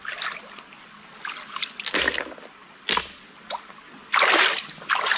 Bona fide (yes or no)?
yes